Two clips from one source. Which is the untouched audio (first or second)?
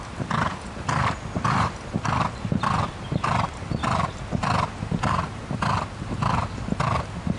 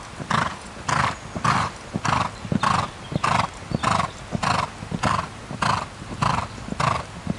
second